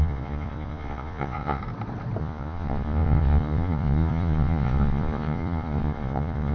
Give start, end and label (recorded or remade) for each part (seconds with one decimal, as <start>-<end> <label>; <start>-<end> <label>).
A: 0.0-1.6 remade; 1.6-2.2 recorded; 2.2-6.5 remade